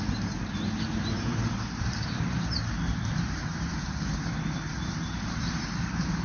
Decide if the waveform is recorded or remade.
remade